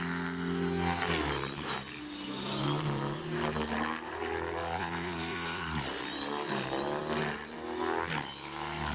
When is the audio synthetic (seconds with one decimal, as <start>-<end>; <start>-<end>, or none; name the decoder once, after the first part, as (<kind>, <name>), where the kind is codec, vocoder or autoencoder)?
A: 4.6-5.8 (vocoder, Vocos)